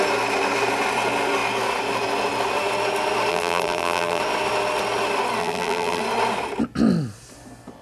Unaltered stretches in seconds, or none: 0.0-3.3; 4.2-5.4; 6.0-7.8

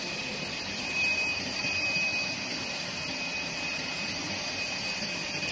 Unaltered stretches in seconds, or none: 2.5-3.1

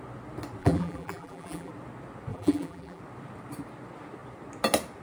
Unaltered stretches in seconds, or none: 0.0-0.6; 1.7-2.3; 3.0-5.0

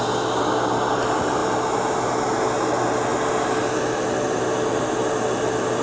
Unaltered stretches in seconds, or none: 0.0-5.8